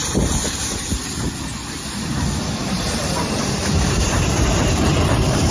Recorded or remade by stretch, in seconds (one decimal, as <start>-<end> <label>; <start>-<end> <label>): 0.0-1.3 remade; 1.3-2.6 recorded; 2.6-5.5 remade